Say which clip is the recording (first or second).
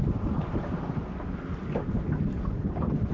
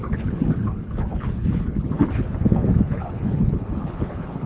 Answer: first